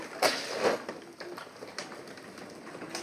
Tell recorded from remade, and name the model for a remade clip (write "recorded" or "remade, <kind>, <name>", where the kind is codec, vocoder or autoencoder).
recorded